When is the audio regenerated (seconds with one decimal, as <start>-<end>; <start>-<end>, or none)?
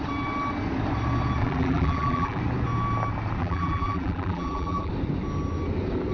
1.4-2.4; 3.4-4.9